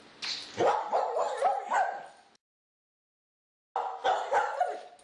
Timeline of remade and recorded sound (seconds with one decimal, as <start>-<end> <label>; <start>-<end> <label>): 0.0-5.0 recorded